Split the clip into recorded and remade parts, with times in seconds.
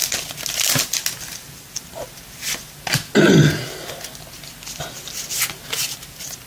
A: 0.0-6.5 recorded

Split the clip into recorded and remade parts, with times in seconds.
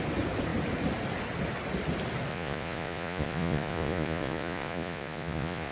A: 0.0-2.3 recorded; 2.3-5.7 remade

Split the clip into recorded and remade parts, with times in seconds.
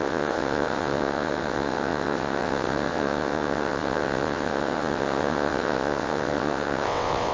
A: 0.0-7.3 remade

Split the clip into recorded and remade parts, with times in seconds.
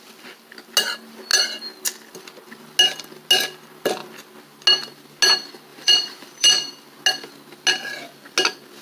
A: 0.0-5.7 recorded; 5.7-6.5 remade; 6.5-8.8 recorded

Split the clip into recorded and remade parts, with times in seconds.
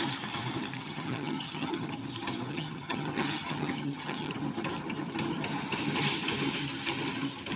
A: 0.0-0.8 recorded; 0.8-1.9 remade; 1.9-2.5 recorded; 2.5-4.3 remade; 4.3-7.6 recorded